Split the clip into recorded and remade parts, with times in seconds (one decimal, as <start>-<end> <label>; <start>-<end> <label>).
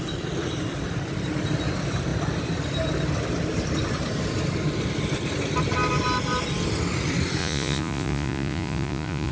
0.0-7.4 recorded; 7.4-9.3 remade